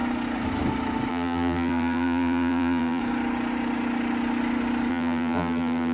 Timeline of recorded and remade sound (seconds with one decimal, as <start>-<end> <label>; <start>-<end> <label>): 0.0-1.1 recorded; 1.1-3.0 remade; 3.0-4.9 recorded; 4.9-5.9 remade